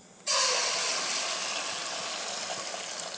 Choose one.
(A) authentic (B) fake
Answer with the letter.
A